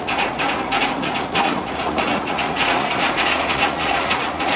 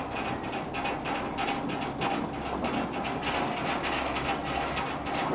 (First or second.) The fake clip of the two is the first